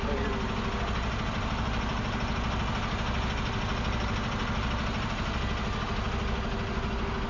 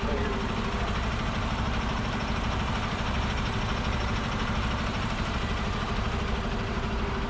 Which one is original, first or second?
first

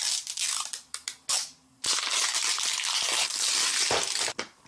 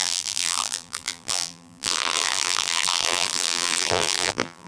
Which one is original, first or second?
first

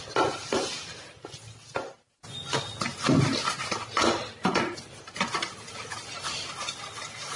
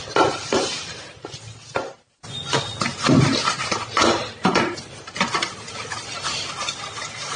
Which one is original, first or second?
first